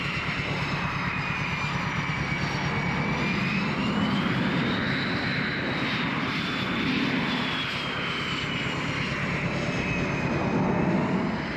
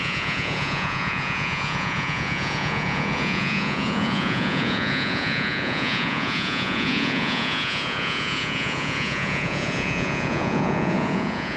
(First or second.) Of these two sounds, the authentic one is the first